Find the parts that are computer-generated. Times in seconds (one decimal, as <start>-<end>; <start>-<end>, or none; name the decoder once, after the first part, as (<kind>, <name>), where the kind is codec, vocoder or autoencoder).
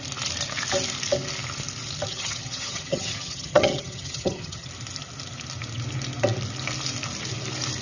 2.1-4.7 (vocoder, HiFi-GAN)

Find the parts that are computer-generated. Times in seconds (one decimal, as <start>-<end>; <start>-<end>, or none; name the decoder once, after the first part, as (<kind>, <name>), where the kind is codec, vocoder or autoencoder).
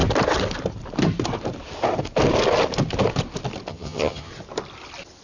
3.7-4.3 (vocoder, HiFi-GAN)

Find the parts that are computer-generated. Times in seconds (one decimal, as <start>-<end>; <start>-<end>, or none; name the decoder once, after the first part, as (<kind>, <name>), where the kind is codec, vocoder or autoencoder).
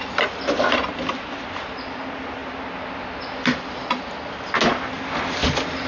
none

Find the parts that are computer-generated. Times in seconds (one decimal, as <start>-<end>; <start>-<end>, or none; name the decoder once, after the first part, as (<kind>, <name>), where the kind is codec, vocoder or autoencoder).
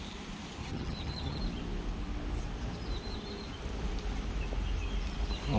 0.6-1.4 (vocoder, HiFi-GAN)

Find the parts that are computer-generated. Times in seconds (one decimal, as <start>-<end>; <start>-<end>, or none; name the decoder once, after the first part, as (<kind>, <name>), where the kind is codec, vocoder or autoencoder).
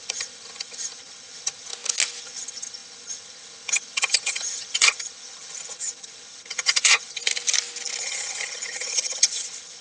0.0-1.7 (vocoder, HiFi-GAN); 2.2-7.2; 8.0-9.8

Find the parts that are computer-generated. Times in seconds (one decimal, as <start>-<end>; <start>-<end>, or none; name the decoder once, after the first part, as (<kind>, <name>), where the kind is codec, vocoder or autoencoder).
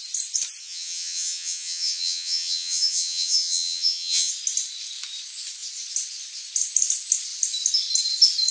0.6-4.3 (vocoder, HiFi-GAN)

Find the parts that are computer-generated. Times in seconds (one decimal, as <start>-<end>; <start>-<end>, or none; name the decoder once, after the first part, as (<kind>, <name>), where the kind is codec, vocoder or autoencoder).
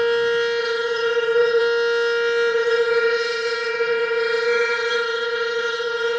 0.6-1.6 (vocoder, HiFi-GAN); 2.5-6.2